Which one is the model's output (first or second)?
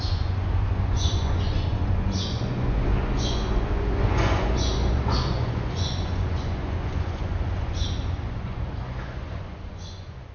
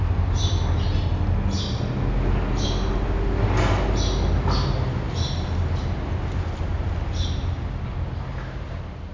first